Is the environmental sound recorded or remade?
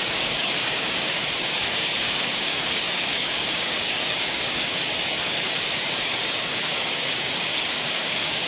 remade